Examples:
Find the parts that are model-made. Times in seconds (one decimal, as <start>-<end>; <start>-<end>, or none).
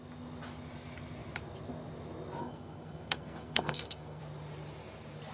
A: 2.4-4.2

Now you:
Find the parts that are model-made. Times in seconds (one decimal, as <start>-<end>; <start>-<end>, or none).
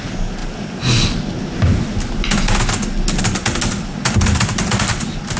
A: none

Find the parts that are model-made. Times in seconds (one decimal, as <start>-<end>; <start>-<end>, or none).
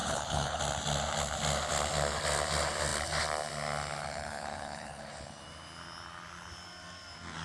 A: 0.0-0.6; 4.1-5.1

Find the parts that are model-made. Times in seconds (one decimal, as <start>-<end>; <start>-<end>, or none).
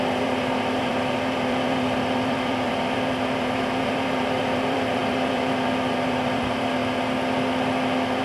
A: 0.0-6.8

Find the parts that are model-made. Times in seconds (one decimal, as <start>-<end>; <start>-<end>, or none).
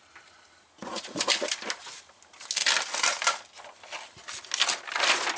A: none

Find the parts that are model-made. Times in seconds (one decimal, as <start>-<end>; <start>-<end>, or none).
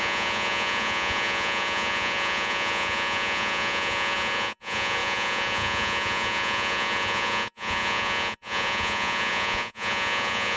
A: 0.0-10.6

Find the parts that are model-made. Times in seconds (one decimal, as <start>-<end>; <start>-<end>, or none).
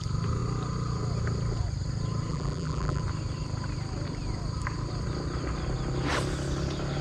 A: 2.3-3.0